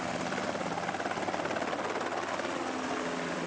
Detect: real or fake real